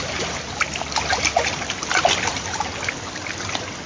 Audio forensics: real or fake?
real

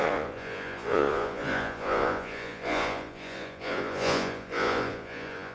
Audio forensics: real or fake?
fake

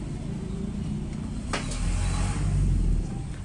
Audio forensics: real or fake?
real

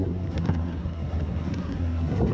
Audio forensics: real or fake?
fake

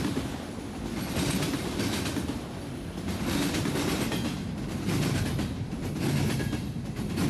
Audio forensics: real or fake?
real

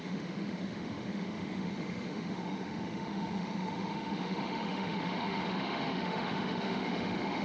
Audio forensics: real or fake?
fake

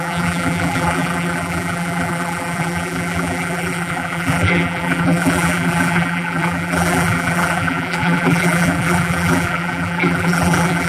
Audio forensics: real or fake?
fake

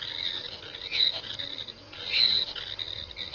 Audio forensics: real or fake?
real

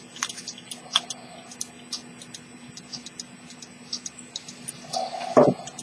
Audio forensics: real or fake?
real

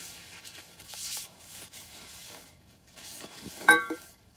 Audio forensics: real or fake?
fake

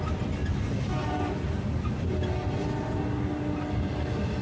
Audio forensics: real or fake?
real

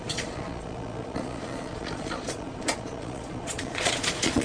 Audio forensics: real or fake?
fake